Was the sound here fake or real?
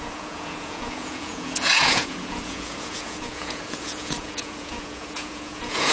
fake